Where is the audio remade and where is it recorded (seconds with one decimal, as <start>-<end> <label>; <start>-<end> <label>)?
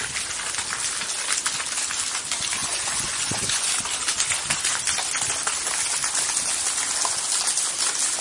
0.0-2.6 recorded; 2.6-3.7 remade; 3.7-8.2 recorded